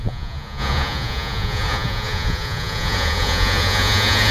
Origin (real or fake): fake